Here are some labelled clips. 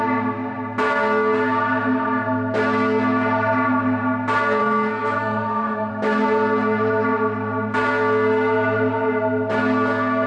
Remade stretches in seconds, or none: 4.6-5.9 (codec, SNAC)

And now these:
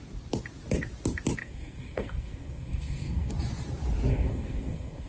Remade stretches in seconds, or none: 1.4-3.3 (codec, SNAC); 4.1-5.1

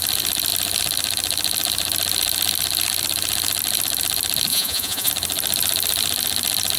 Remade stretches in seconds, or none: 4.5-5.1 (vocoder, Vocos)

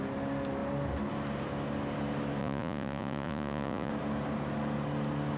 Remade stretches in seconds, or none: 2.4-3.9 (vocoder, Vocos)

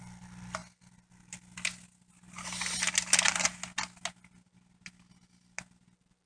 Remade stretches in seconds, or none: none